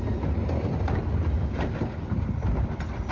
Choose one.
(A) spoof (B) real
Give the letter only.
B